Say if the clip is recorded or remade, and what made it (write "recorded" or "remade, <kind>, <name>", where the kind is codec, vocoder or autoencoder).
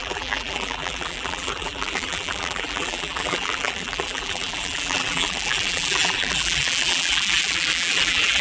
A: remade, vocoder, BigVGAN v2